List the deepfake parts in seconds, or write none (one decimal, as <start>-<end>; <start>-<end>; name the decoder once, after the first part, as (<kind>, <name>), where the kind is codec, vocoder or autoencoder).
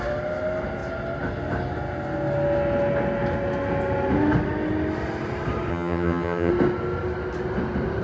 5.7-6.5 (vocoder, HiFi-GAN)